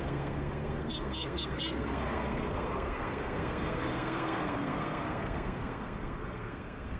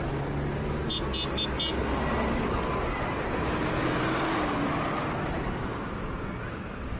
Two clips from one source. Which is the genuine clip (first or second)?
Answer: second